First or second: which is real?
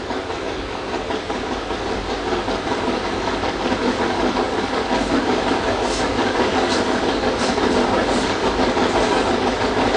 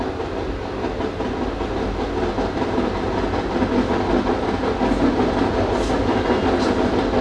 second